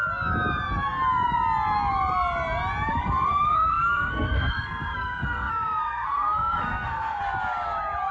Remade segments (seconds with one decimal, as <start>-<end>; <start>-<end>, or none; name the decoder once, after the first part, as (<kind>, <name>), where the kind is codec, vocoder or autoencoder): 2.9-7.2 (codec, SNAC)